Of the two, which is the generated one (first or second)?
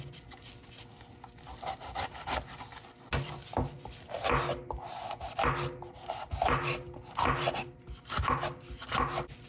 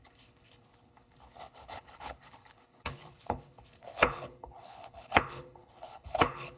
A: second